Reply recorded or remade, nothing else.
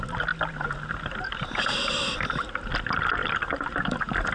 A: recorded